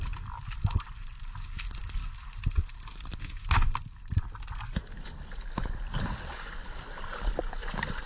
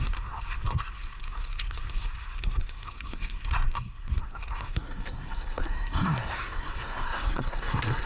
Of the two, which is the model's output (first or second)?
second